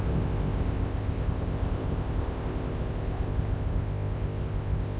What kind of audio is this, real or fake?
fake